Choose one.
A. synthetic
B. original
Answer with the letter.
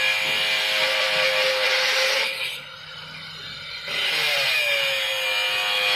B